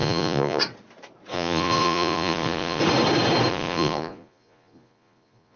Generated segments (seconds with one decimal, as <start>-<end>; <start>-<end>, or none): 0.0-0.6; 1.3-2.8; 3.5-5.6